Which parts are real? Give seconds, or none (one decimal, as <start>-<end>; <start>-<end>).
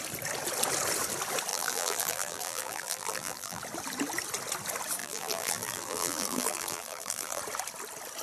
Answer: 0.0-1.5; 3.6-5.0; 7.4-8.2